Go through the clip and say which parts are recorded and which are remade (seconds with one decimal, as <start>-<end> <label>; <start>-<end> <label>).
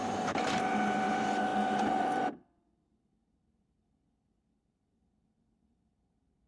0.0-6.5 remade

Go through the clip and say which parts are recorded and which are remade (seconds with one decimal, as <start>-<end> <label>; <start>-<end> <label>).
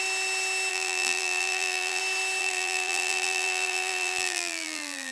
0.0-0.7 recorded; 0.7-2.0 remade; 2.0-2.4 recorded; 2.4-5.1 remade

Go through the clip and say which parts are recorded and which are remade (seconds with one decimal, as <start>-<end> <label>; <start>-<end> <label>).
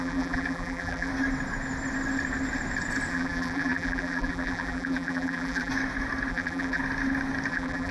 0.0-1.1 remade; 1.1-3.1 recorded; 3.1-5.7 remade; 5.7-6.3 recorded; 6.3-6.8 remade; 6.8-7.5 recorded; 7.5-7.9 remade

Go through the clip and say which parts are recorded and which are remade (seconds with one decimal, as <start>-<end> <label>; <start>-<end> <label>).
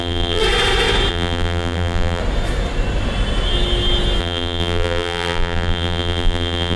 0.0-0.4 remade; 0.4-1.1 recorded; 1.1-2.2 remade; 2.2-4.2 recorded; 4.2-6.8 remade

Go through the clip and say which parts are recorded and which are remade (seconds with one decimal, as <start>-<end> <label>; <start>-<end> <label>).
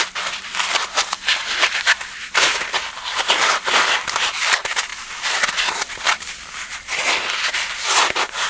0.0-4.9 recorded; 4.9-5.5 remade; 5.5-8.5 recorded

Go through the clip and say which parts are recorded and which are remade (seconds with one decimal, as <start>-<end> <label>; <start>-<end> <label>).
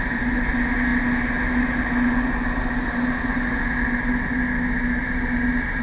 0.0-5.8 recorded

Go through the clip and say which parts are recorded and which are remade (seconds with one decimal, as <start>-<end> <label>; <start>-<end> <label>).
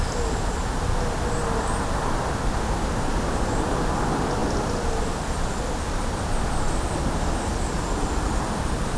0.0-9.0 recorded